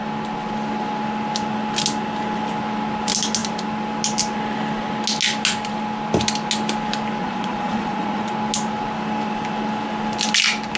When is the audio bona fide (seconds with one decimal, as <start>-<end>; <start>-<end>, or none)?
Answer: 0.0-7.2; 8.3-10.8